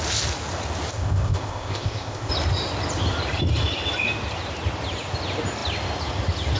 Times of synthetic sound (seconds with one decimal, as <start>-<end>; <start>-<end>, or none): 0.9-2.3